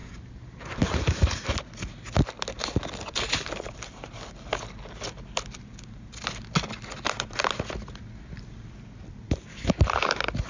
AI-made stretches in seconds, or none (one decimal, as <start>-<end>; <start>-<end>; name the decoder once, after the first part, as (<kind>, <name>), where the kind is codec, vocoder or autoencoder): 0.0-1.5 (vocoder, BigVGAN v2)